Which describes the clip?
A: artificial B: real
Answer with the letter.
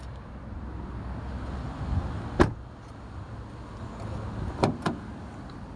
B